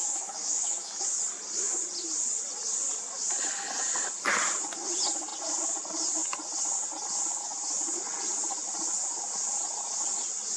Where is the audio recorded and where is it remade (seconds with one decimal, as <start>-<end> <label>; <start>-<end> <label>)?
0.0-1.0 remade; 1.0-10.6 recorded